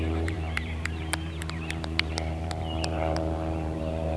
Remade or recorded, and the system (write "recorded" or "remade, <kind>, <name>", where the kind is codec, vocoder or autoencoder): remade, vocoder, BigVGAN v2